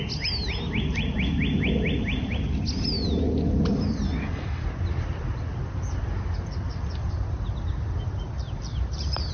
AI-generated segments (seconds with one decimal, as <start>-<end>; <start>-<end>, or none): 8.7-9.3